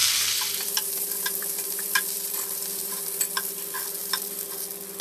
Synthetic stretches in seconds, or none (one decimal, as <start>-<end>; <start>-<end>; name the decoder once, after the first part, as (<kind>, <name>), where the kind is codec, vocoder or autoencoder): 0.0-3.0 (vocoder, BigVGAN v2); 4.0-4.6